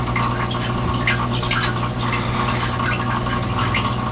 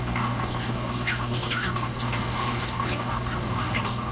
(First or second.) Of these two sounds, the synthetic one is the second